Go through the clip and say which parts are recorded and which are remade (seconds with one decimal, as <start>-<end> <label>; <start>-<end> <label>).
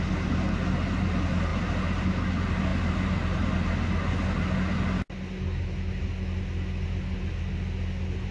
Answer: 0.0-8.3 recorded